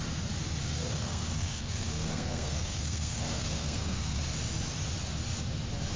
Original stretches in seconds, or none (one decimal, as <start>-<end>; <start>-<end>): 0.0-0.6; 4.2-6.0